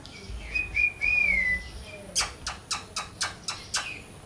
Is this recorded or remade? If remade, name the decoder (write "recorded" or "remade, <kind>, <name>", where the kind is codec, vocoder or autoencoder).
recorded